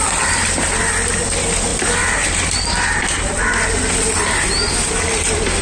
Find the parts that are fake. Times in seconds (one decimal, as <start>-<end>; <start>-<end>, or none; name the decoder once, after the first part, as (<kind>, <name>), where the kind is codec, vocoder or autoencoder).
none